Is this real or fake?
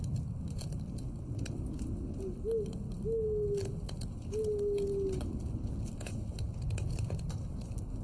real